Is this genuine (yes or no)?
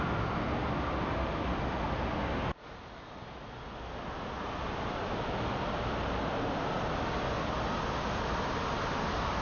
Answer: yes